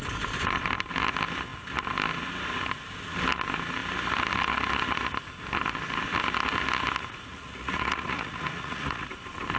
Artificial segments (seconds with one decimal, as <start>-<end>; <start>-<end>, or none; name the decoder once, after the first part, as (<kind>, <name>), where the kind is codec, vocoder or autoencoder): 7.3-9.1 (vocoder, Vocos)